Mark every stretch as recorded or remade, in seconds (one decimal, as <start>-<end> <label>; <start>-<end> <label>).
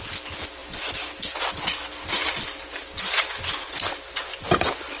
0.0-5.0 recorded